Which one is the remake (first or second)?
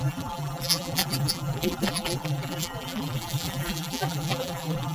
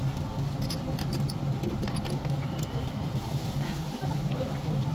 first